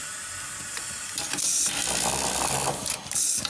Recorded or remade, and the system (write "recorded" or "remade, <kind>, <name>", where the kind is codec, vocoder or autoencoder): recorded